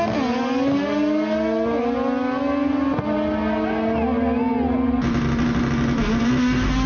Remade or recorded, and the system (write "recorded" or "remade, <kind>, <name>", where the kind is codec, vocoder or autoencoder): recorded